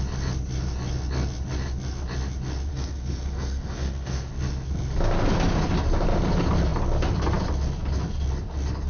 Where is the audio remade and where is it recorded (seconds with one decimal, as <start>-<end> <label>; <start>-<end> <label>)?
0.0-2.7 recorded; 2.7-4.3 remade; 4.3-8.9 recorded